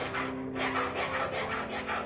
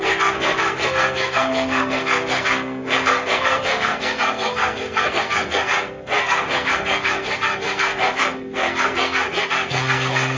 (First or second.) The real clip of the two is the first